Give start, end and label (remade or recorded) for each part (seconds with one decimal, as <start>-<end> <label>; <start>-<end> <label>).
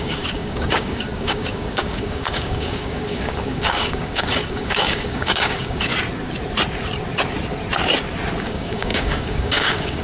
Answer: 0.0-5.9 remade; 5.9-8.4 recorded; 8.4-10.0 remade